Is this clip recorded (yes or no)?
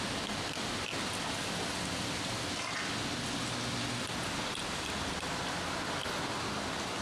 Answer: yes